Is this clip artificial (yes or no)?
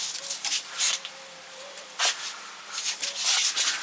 yes